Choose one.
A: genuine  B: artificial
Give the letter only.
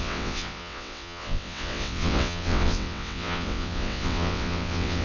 B